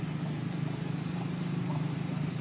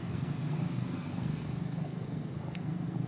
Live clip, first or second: first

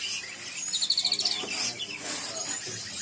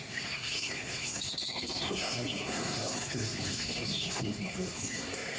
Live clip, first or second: first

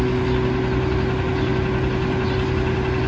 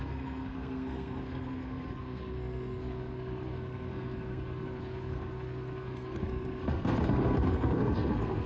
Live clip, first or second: first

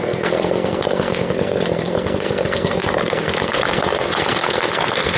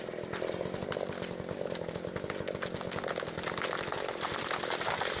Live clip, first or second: second